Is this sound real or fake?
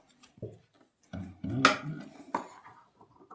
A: real